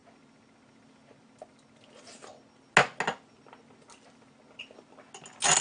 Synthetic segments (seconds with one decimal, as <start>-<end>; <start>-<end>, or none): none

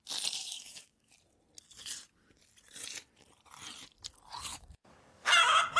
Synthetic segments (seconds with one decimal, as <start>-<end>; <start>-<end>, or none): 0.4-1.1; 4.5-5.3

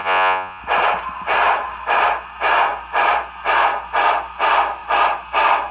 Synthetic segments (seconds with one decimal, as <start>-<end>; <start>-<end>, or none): 0.0-0.6

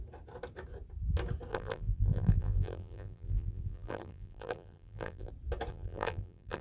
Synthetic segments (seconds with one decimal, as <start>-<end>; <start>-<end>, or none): 1.5-5.3; 5.7-6.6

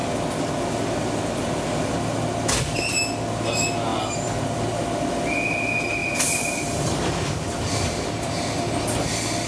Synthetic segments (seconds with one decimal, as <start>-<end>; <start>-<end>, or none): 3.9-4.7; 6.0-8.3

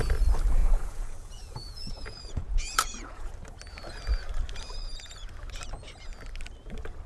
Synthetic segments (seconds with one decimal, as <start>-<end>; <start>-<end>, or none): 0.6-3.3; 4.8-5.3

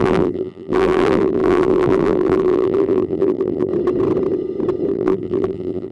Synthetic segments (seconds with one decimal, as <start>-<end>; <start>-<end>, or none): 0.0-3.7; 4.9-5.9

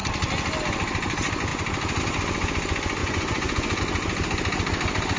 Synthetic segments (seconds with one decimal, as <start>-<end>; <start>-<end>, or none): 3.0-3.8